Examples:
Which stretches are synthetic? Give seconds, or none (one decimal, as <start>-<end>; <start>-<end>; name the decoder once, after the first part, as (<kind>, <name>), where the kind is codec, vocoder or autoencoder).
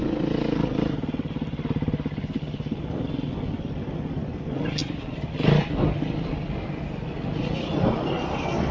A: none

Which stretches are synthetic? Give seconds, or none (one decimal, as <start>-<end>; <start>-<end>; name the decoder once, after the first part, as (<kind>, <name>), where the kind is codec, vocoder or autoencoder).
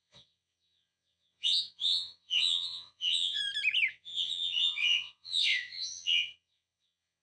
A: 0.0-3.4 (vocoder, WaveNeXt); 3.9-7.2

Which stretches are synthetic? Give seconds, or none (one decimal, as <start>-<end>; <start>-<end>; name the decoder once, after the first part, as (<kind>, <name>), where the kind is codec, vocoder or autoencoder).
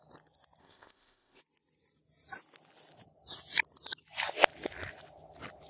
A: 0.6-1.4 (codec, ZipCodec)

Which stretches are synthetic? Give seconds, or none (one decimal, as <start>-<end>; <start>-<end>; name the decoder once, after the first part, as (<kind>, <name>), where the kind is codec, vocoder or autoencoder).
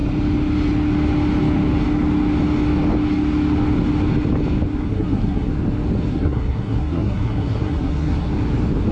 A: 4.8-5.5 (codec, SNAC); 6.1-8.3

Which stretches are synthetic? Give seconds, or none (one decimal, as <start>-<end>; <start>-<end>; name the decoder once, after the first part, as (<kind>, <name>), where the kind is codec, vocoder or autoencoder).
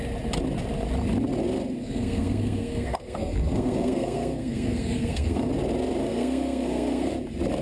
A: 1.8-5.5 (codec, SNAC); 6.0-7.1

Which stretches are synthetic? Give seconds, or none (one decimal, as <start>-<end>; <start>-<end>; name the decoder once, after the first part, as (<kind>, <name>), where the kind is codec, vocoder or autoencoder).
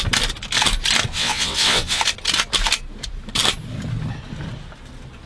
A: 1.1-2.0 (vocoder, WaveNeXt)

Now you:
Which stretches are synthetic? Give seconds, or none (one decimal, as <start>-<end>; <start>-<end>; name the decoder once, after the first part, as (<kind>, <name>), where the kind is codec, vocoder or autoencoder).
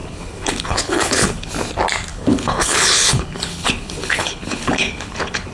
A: 0.0-1.5 (codec, HILCodec); 2.1-5.5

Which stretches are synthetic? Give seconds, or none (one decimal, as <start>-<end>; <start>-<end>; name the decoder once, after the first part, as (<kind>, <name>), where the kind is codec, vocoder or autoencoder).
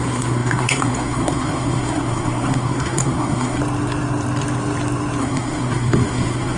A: 0.0-3.6 (codec, SNAC); 5.2-6.6